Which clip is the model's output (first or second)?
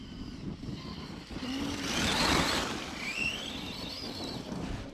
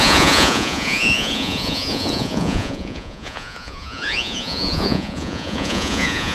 second